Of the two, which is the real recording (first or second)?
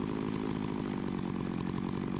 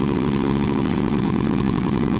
first